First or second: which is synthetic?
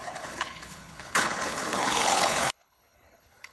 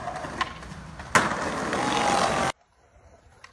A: first